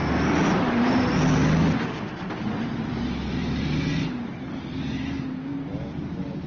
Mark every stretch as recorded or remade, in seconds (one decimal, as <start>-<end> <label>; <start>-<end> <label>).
0.0-6.5 recorded